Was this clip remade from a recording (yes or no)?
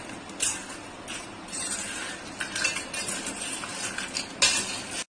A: no